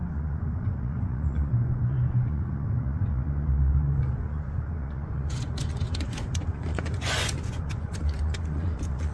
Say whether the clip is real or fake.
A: fake